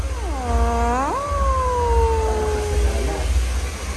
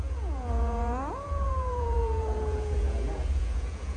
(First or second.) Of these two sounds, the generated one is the second